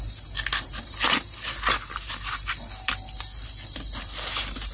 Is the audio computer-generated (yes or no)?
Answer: yes